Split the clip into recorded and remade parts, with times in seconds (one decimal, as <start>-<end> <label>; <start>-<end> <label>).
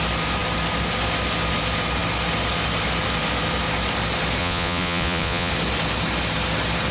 0.0-4.4 recorded; 4.4-5.5 remade; 5.5-6.9 recorded